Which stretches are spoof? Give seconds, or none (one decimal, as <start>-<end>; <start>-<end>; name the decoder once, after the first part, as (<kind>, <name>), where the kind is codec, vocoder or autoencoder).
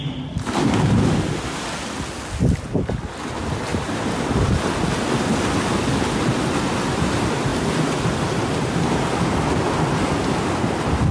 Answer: 3.7-4.5 (vocoder, BigVGAN v2)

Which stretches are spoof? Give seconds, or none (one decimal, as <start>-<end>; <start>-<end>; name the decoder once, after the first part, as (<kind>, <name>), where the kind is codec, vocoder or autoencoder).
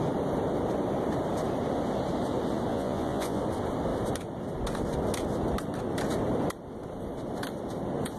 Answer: 2.7-3.4 (vocoder, Vocos)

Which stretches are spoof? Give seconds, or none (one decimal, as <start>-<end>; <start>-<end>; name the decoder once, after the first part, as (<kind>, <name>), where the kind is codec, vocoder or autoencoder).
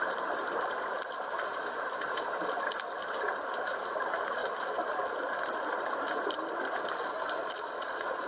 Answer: 7.4-8.3 (vocoder, Vocos)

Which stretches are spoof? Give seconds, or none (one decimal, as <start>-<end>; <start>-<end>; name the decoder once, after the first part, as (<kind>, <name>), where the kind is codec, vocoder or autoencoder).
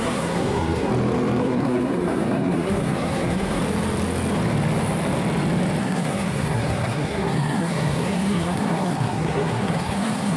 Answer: 0.0-0.9 (codec, SNAC); 1.4-3.6; 5.8-10.4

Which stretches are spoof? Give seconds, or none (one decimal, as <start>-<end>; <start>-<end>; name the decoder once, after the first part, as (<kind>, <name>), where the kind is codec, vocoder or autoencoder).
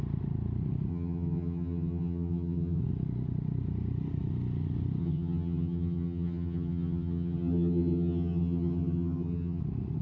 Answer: 0.9-2.8 (vocoder, HiFi-GAN); 5.0-9.6